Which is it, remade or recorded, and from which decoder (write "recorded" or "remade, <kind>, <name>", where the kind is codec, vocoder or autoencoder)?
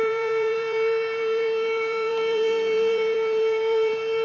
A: remade, vocoder, BigVGAN v2